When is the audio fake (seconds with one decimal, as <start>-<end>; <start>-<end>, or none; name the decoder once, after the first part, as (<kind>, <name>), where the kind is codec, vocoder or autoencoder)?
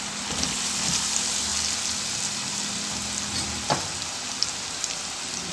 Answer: none